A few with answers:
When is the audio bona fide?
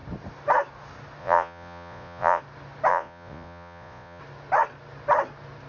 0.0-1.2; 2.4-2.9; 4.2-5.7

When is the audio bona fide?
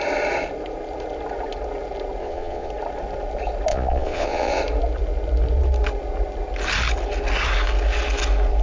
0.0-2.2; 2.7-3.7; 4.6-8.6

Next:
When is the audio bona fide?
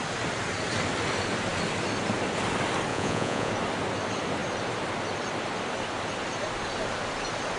0.0-2.9; 3.5-7.6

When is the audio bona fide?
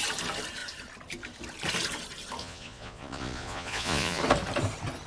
0.0-2.4; 4.2-5.1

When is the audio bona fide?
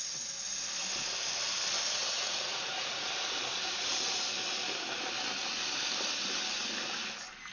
0.0-1.9; 3.1-3.5; 4.1-7.5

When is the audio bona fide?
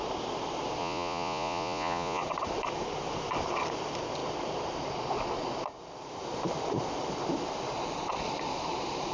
0.0-0.8; 2.2-9.1